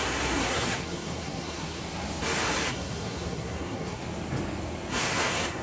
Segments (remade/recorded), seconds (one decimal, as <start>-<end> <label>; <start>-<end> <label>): 0.0-1.8 remade; 1.8-2.7 recorded; 2.7-4.0 remade; 4.0-4.9 recorded; 4.9-5.6 remade